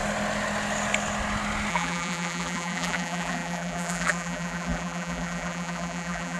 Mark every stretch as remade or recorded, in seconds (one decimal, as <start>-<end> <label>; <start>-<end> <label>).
0.0-1.7 recorded; 1.7-6.4 remade